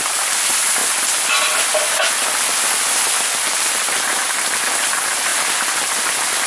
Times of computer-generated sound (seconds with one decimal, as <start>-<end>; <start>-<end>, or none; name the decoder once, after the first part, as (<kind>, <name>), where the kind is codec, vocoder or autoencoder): none